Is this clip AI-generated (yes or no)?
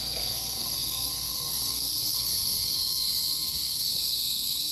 yes